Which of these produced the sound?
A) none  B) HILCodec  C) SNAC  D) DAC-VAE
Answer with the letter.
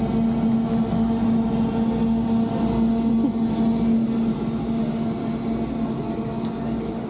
A